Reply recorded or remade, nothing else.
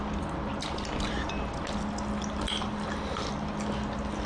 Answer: recorded